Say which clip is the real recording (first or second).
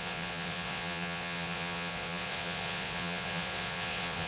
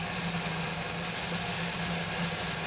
second